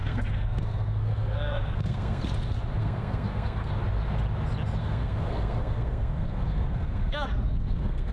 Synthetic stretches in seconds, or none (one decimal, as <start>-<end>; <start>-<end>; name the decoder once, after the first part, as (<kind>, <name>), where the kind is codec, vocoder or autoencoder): 0.0-2.2 (codec, SNAC); 2.8-3.7; 4.8-8.1